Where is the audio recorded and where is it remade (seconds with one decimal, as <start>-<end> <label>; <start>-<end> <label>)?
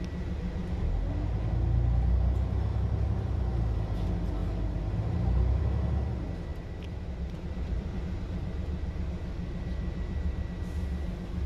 0.0-6.5 recorded; 6.5-10.4 remade; 10.4-11.5 recorded